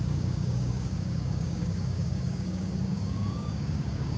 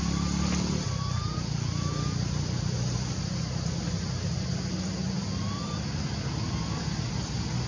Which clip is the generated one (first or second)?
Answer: first